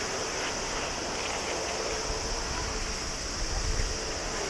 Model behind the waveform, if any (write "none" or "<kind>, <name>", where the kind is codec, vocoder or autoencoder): none